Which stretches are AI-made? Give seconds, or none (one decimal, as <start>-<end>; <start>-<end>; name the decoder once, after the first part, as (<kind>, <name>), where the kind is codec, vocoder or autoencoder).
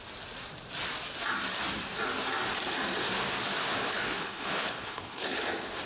3.7-5.5 (codec, HILCodec)